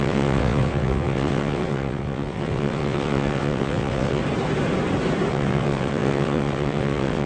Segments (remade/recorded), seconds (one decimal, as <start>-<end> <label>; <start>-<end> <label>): 0.0-4.2 remade; 4.2-5.3 recorded; 5.3-7.3 remade